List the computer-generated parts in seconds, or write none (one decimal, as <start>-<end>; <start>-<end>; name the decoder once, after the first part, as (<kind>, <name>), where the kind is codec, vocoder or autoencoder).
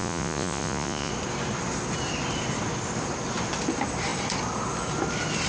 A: 0.0-1.1 (vocoder, Vocos)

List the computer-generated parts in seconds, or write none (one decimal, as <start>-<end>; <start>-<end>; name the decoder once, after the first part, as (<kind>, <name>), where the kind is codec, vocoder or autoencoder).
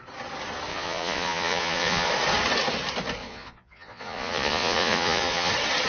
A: 0.7-2.1 (vocoder, Vocos); 3.2-5.5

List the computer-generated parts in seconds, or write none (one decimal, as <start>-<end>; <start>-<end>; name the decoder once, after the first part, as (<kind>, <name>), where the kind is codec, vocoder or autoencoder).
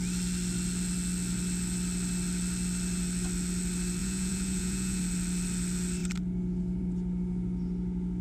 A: 4.0-5.0 (vocoder, Vocos)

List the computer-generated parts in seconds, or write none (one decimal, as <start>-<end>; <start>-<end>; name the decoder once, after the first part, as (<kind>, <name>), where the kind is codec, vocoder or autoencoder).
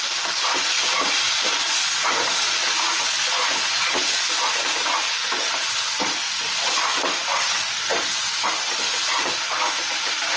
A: none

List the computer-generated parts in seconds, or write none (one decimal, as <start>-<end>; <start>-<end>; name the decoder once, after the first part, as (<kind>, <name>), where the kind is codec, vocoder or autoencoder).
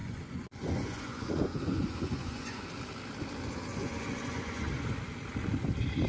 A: 0.0-2.6 (vocoder, Vocos); 3.7-4.9